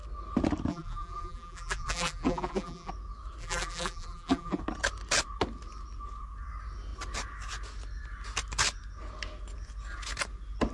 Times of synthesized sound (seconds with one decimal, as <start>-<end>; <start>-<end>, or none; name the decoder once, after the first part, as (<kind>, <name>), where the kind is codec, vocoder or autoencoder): 0.7-2.9 (vocoder, BigVGAN v2); 3.4-4.6